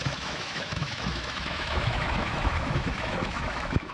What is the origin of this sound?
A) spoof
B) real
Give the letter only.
A